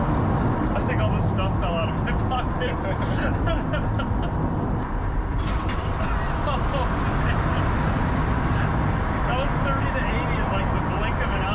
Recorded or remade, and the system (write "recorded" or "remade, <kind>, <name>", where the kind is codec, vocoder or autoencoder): recorded